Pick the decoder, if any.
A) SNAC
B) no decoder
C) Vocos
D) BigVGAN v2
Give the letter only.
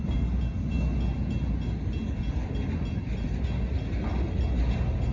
B